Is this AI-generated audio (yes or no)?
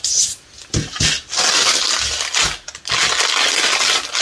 no